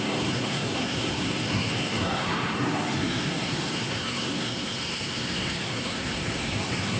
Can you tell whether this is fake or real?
fake